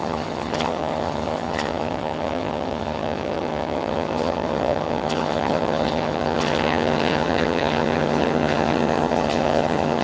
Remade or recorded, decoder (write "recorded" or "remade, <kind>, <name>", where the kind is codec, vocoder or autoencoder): remade, vocoder, HiFi-GAN